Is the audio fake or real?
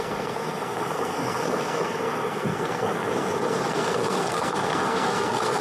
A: fake